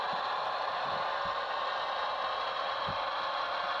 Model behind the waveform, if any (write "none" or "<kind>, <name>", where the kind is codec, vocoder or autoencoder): none